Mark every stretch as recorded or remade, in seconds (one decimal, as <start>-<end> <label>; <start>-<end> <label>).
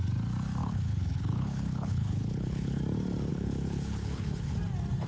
0.0-0.6 recorded; 0.6-2.8 remade; 2.8-3.3 recorded; 3.3-4.5 remade; 4.5-5.1 recorded